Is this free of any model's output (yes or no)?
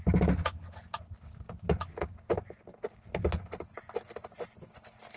yes